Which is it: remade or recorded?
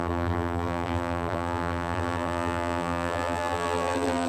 remade